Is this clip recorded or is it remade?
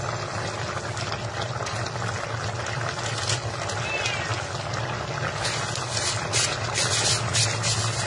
recorded